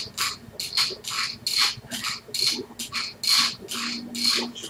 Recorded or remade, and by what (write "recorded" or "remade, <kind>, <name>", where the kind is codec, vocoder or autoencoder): recorded